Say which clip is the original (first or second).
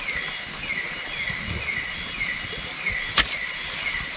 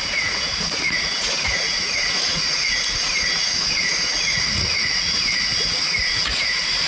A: first